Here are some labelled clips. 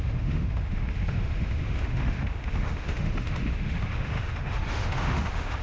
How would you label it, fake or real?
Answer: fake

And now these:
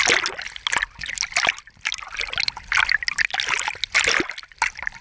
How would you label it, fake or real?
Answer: real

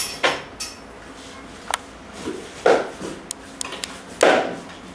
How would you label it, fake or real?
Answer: real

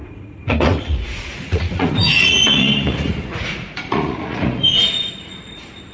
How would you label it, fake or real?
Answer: fake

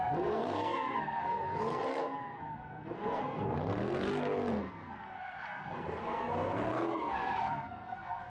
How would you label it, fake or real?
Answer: fake